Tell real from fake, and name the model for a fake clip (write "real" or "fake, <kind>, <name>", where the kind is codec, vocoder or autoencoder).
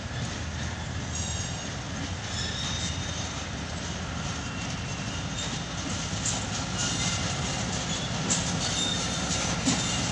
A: real